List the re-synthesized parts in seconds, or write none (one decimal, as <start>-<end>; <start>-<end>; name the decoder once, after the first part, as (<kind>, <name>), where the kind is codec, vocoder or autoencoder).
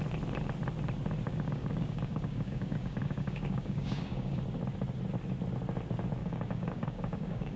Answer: 1.3-4.4 (codec, DAC); 6.2-7.6